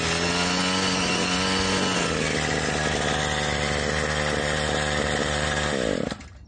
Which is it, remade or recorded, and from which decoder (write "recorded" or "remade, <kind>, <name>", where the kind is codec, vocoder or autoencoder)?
recorded